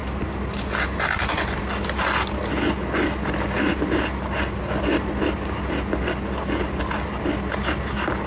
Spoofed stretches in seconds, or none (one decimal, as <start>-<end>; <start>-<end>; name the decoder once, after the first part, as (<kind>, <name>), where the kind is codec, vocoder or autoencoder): none